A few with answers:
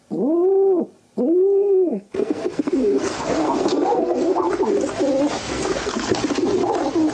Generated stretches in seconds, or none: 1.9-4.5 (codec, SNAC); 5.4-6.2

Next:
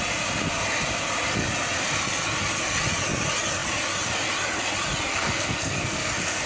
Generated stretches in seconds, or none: 5.1-6.5 (codec, SNAC)

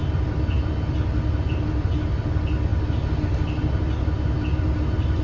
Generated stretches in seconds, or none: none